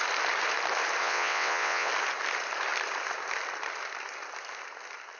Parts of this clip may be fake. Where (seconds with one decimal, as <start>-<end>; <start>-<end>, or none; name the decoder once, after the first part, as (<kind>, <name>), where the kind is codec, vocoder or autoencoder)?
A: 1.0-1.9 (vocoder, WaveNeXt)